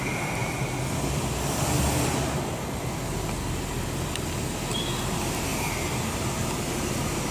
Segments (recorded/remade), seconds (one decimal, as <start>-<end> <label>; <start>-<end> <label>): 0.0-7.3 recorded